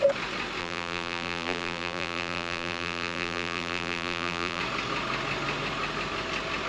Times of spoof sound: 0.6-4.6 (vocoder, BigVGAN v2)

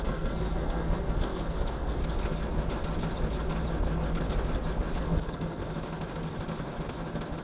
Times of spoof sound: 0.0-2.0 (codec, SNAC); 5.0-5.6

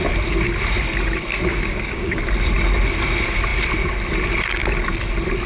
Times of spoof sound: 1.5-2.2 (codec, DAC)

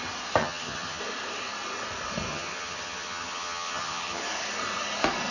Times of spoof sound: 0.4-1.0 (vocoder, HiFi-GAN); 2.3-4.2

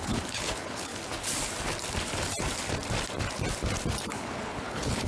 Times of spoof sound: 0.0-0.9 (codec, HILCodec); 4.0-5.1